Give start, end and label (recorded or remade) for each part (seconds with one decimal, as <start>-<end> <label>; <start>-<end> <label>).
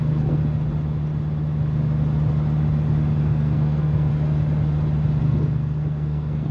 0.0-0.4 remade; 0.4-3.2 recorded; 3.2-4.1 remade; 4.1-5.2 recorded; 5.2-6.5 remade